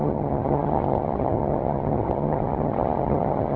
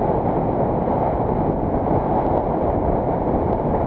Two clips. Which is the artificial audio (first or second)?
first